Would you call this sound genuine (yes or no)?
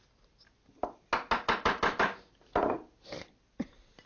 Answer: yes